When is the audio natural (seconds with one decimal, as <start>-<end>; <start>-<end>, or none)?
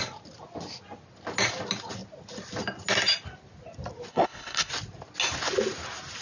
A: 0.0-4.1; 4.7-6.2